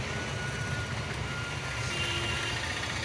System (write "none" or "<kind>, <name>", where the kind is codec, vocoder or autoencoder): none